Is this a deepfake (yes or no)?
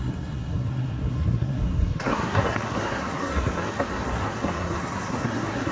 yes